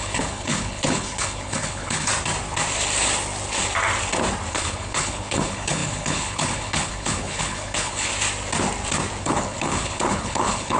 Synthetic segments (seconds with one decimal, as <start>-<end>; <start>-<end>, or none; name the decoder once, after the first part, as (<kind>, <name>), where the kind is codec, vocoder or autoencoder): 0.0-2.1 (codec, HILCodec); 4.5-8.1; 9.2-10.8